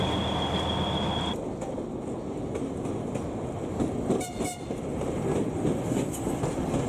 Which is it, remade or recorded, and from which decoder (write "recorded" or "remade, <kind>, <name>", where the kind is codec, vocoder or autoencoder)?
recorded